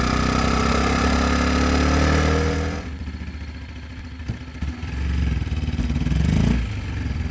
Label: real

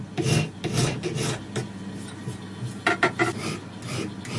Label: real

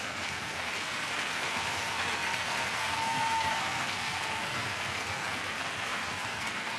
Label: fake